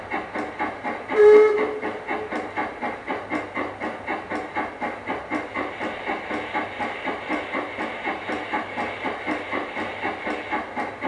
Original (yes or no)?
yes